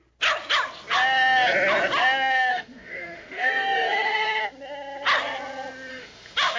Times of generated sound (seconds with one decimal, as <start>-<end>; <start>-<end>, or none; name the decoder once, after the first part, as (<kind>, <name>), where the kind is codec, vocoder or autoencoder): 2.5-4.4 (autoencoder, DAC-VAE); 5.9-6.6